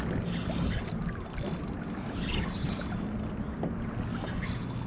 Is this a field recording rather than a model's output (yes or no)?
yes